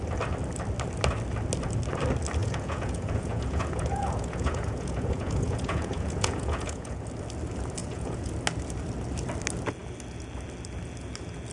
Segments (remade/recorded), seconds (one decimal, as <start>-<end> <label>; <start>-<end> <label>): 0.0-2.4 recorded; 2.4-7.0 remade; 7.0-7.8 recorded; 7.8-8.3 remade; 8.3-11.5 recorded